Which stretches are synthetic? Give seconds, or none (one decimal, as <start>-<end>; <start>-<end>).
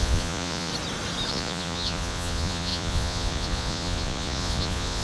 0.0-0.7; 1.3-5.0